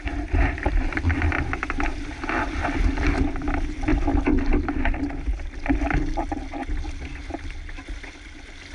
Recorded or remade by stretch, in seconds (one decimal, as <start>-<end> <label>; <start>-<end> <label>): 0.0-8.7 recorded